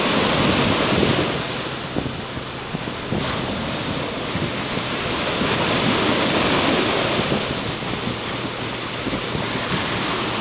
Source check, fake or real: real